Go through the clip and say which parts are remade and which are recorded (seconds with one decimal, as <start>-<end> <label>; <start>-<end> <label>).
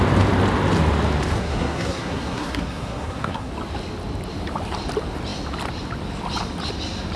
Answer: 0.0-1.3 recorded; 1.3-3.5 remade; 3.5-7.2 recorded